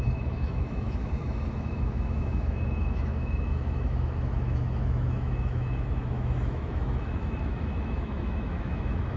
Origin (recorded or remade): remade